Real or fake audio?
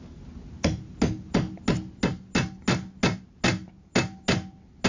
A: real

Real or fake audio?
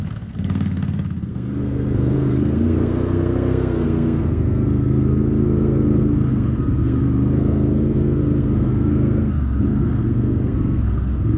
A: fake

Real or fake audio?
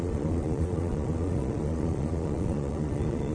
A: fake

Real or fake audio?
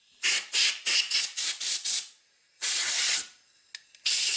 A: real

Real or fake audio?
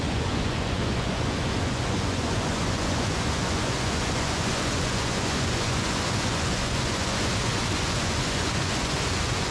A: fake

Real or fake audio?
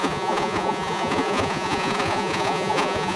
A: fake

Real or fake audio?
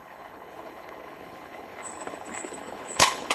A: fake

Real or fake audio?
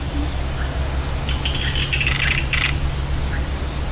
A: real